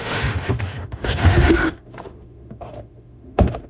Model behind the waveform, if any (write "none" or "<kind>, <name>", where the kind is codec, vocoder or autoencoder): autoencoder, DAC-VAE